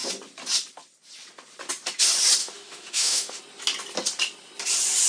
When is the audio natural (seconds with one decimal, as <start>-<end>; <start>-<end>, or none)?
0.0-2.4; 3.4-5.1